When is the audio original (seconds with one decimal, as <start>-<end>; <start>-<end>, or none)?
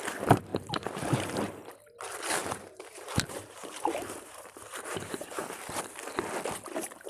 0.0-0.5; 1.4-2.4; 5.8-7.1